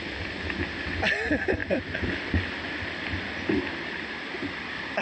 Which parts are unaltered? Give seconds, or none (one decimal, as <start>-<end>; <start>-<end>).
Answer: 0.0-1.6; 3.6-5.0